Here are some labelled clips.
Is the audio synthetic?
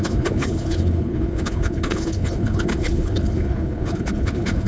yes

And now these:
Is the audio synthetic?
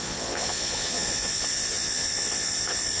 yes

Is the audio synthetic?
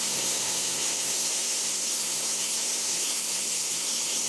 yes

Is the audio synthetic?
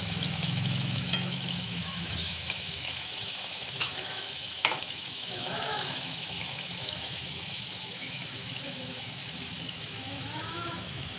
yes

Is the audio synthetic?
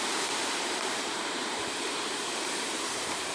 yes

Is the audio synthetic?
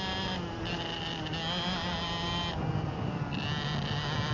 no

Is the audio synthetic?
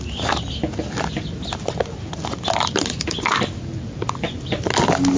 no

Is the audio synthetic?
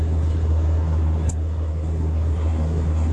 yes